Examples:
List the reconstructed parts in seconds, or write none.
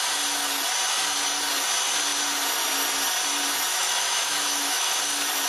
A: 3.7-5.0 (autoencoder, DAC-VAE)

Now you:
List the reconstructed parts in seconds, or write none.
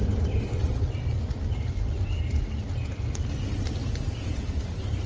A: 3.8-4.6 (vocoder, Vocos)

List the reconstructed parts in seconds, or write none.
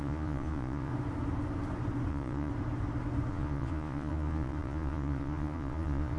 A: 0.0-0.9 (vocoder, Vocos); 2.1-2.5; 3.3-6.2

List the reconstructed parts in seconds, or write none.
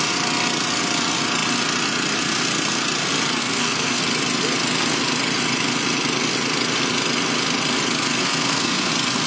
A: 3.4-4.0 (codec, SNAC); 8.2-8.9